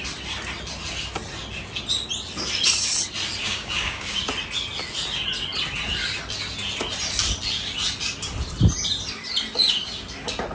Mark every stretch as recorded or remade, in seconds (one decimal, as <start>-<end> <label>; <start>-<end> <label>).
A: 0.0-3.4 recorded; 3.4-4.2 remade; 4.2-10.5 recorded